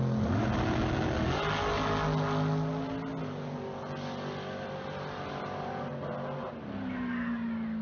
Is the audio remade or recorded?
recorded